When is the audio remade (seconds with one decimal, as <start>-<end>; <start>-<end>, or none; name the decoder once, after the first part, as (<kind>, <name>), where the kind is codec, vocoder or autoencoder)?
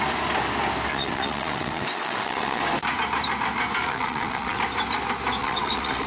0.9-2.6 (vocoder, WaveNeXt); 3.8-4.6; 5.4-6.1